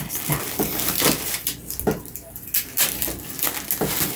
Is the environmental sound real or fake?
real